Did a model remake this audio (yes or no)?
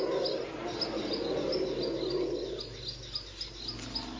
no